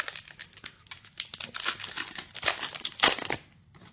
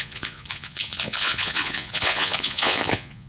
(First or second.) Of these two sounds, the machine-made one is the second